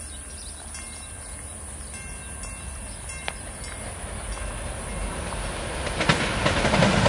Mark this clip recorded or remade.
recorded